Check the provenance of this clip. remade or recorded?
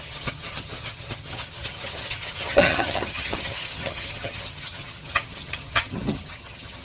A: remade